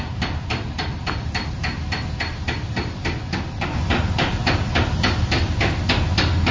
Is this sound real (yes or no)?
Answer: yes